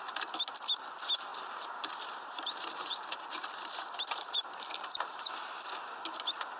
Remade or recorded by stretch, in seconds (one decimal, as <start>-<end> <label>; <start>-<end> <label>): 0.0-1.3 recorded; 1.3-5.3 remade; 5.3-6.6 recorded